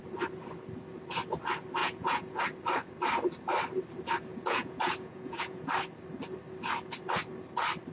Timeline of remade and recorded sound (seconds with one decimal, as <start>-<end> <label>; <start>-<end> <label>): 0.0-1.8 recorded; 1.8-2.4 remade; 2.4-4.3 recorded; 4.3-5.7 remade; 5.7-7.9 recorded